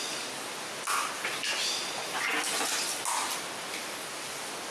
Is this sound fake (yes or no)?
no